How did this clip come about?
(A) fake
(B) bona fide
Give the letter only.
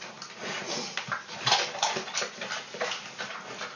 B